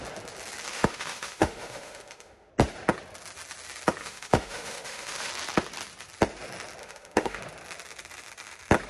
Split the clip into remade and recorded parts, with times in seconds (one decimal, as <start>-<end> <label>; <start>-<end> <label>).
0.0-0.7 recorded; 0.7-2.5 remade; 2.5-4.0 recorded; 4.0-5.3 remade; 5.3-6.8 recorded; 6.8-7.4 remade; 7.4-8.9 recorded